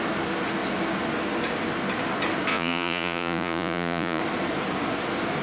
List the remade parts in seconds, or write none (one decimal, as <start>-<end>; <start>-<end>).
2.5-4.2